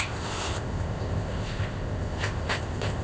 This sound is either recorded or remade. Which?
remade